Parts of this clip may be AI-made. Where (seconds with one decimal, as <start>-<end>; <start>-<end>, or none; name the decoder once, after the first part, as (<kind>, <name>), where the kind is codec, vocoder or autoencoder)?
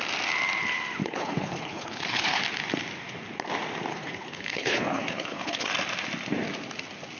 1.0-2.4 (codec, HILCodec); 3.9-5.7